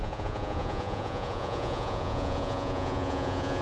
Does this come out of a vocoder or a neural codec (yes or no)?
yes